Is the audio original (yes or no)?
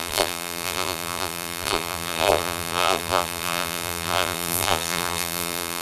no